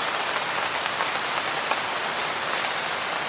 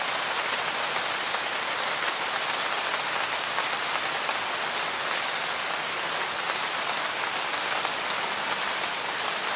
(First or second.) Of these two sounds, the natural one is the second